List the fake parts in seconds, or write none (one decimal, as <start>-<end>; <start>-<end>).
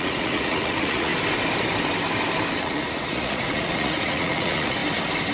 0.0-1.1; 2.6-4.8